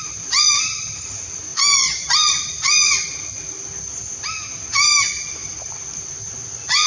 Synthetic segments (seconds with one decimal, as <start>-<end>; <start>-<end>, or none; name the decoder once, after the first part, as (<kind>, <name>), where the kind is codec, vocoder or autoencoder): 0.0-4.1 (vocoder, BigVGAN v2); 5.3-6.9